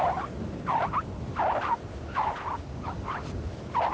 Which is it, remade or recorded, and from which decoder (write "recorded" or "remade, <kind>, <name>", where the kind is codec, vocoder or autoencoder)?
recorded